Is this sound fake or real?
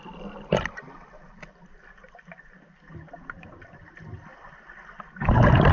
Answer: real